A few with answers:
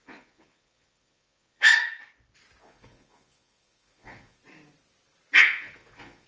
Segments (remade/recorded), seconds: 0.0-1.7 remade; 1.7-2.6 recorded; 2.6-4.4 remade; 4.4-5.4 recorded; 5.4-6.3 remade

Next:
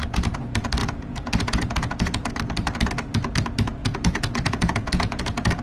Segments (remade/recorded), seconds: 0.0-0.8 recorded; 0.8-2.3 remade; 2.3-3.8 recorded; 3.8-5.6 remade

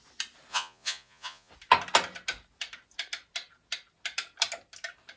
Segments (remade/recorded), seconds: 0.0-0.5 recorded; 0.5-1.5 remade; 1.5-5.2 recorded

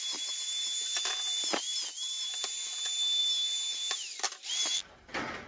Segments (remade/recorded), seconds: 0.0-5.5 recorded

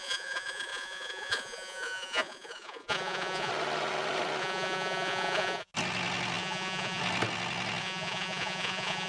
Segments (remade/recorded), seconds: 0.0-3.5 remade; 3.5-4.4 recorded; 4.4-5.7 remade; 5.7-6.4 recorded; 6.4-7.0 remade; 7.0-7.8 recorded; 7.8-9.1 remade

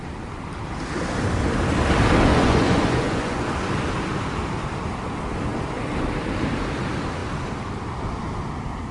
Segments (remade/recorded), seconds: 0.0-2.3 recorded; 2.3-3.4 remade; 3.4-8.9 recorded

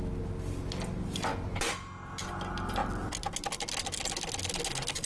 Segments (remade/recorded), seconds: 0.0-5.1 recorded